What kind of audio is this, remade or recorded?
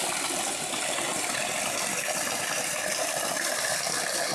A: recorded